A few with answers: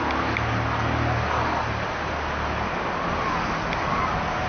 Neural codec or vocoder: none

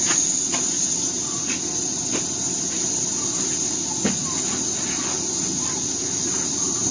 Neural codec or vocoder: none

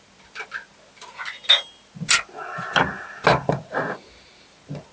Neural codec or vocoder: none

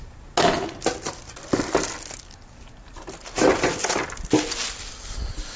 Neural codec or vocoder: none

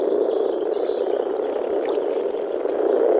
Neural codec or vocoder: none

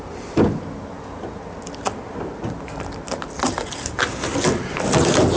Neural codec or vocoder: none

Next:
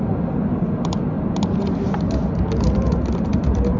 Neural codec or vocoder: none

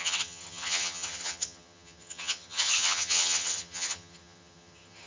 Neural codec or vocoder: vocoder, HiFi-GAN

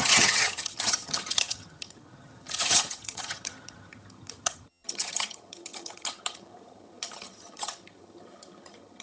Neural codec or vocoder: vocoder, HiFi-GAN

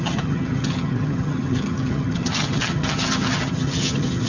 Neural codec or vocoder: vocoder, HiFi-GAN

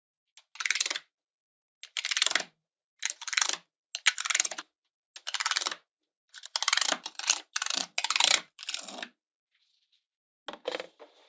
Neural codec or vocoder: none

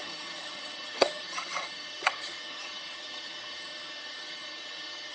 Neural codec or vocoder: vocoder, HiFi-GAN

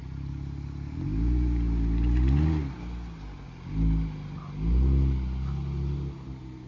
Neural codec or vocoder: none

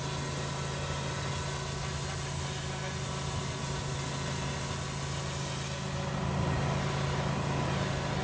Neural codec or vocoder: none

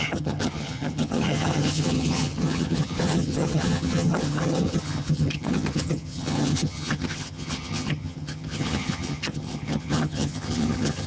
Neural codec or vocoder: vocoder, HiFi-GAN